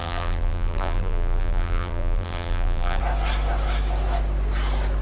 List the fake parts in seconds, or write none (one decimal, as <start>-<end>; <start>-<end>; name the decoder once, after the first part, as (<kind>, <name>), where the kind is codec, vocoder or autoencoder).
0.0-3.0 (vocoder, BigVGAN v2)